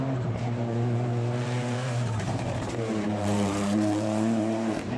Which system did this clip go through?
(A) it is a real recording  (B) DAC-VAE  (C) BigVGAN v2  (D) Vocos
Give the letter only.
C